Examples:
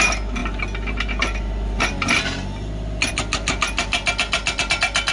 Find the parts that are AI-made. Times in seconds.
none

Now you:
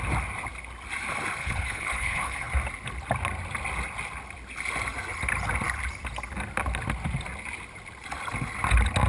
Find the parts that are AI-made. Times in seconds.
1.4-2.5 (codec, HILCodec)

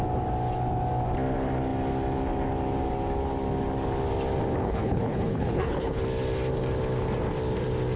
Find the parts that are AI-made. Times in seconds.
4.6-6.0 (codec, HILCodec)

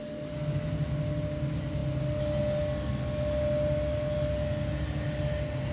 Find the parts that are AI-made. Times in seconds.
none

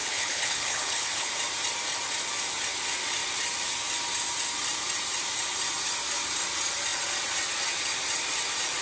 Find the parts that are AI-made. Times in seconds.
0.0-1.3 (codec, HILCodec)